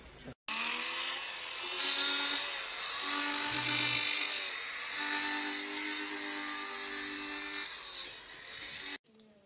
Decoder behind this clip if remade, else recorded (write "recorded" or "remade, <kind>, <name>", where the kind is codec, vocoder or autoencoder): recorded